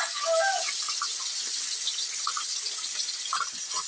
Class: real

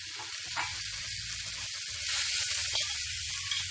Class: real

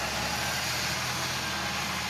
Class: real